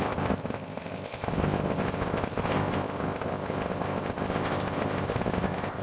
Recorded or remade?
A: remade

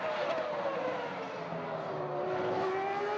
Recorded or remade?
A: recorded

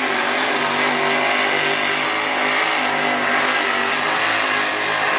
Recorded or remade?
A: recorded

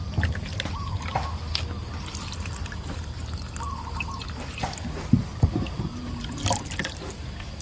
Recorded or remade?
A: recorded